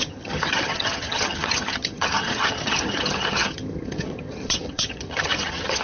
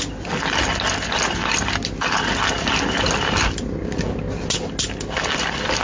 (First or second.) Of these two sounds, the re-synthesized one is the first